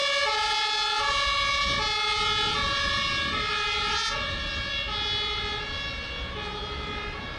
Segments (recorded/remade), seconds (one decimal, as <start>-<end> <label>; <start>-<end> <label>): 0.0-7.4 recorded